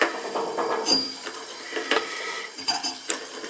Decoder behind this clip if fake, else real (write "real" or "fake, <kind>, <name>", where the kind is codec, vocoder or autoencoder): fake, vocoder, BigVGAN v2